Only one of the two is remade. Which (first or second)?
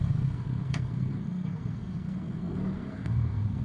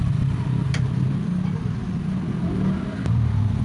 first